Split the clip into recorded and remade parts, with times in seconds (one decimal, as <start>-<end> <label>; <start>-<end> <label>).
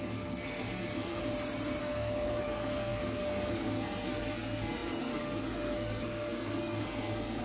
0.0-1.2 remade; 1.2-1.8 recorded; 1.8-7.4 remade